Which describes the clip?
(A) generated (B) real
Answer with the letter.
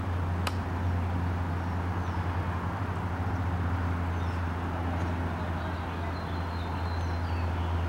B